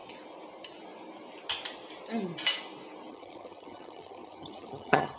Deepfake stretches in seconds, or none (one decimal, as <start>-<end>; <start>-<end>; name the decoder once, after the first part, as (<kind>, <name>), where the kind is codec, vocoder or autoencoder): 3.1-5.2 (vocoder, HiFi-GAN)